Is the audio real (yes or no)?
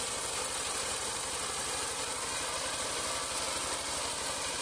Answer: yes